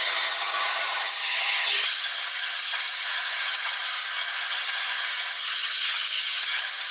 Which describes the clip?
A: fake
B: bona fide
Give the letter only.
A